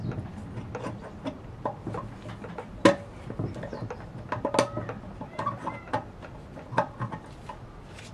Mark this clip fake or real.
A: real